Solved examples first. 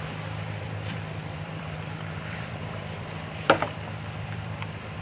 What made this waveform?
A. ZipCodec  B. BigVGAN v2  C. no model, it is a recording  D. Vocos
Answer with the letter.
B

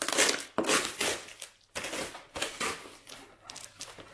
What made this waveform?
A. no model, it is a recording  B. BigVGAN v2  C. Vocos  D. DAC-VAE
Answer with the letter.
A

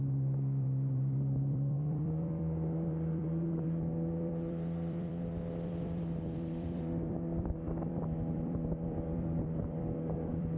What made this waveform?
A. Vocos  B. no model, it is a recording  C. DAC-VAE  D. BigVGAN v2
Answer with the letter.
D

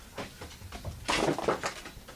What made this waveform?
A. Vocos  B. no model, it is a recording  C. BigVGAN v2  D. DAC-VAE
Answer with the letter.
B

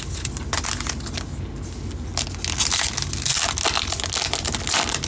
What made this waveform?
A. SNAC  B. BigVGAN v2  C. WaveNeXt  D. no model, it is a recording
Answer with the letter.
D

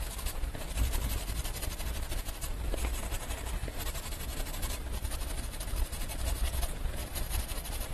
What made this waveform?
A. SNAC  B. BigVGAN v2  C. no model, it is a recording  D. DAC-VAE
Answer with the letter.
B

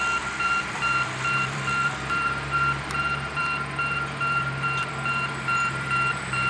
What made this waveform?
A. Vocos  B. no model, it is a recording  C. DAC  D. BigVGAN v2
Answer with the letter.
D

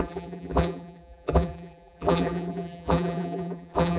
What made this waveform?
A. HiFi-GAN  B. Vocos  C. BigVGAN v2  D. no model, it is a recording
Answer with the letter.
C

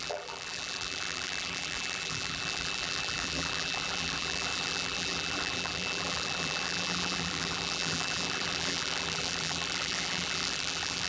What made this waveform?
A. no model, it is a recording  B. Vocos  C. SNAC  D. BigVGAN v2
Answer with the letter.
D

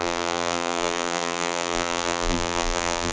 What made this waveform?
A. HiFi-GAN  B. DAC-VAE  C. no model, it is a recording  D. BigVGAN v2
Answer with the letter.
D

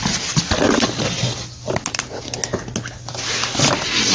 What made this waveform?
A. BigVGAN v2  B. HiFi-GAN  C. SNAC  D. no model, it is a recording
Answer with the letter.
D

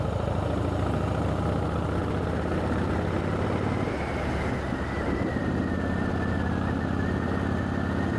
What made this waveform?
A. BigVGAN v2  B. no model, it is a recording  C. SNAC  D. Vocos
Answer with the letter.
B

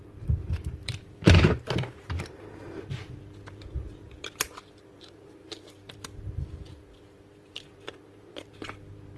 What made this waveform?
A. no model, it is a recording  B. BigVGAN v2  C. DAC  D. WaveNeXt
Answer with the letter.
B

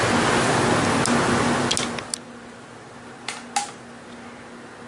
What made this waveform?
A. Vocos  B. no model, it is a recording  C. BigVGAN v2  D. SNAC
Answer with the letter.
B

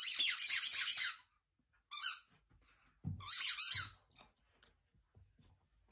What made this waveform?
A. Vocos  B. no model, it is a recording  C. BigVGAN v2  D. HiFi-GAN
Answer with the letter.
B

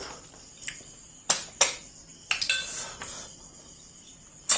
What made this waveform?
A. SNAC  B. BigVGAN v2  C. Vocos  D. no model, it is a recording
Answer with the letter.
D